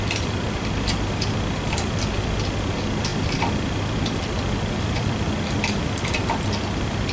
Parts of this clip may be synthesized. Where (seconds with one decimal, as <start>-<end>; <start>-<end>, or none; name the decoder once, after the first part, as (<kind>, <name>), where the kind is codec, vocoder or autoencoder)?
3.1-6.0 (vocoder, BigVGAN v2)